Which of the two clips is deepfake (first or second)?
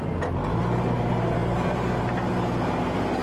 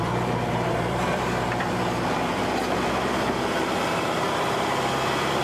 second